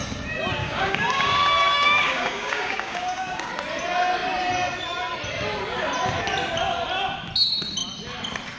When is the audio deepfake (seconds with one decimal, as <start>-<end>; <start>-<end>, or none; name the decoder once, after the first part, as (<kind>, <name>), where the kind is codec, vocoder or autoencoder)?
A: 0.6-3.5 (codec, DAC)